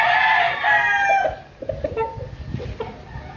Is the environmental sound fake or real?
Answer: real